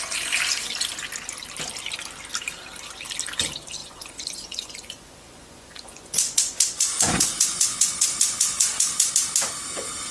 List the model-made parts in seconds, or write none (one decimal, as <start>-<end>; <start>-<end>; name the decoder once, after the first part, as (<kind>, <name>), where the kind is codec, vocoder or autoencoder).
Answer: 3.8-9.1 (vocoder, Vocos)